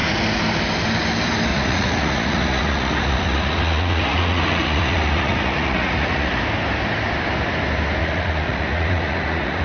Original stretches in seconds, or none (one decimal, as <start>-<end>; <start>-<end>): 0.0-1.5; 6.4-8.0

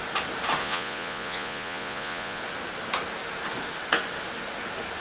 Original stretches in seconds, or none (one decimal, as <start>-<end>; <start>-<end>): 0.0-0.6; 2.4-5.0

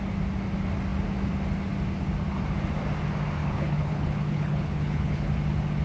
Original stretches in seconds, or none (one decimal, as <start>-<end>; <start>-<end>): 0.0-3.4; 5.3-5.8